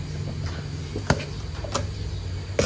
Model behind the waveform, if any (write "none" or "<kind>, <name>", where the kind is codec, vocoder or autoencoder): none